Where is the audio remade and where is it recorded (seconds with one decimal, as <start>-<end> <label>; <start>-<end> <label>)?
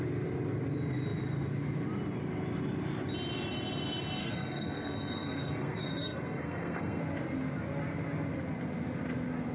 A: 0.0-4.2 recorded; 4.2-7.0 remade; 7.0-9.5 recorded